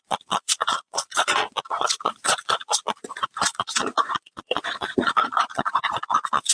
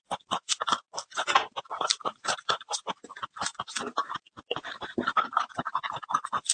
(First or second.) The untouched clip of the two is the second